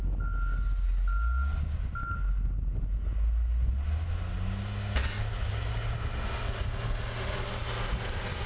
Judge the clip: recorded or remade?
recorded